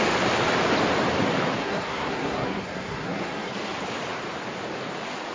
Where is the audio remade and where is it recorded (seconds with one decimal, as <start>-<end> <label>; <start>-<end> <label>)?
0.0-1.6 recorded; 1.6-3.5 remade; 3.5-5.3 recorded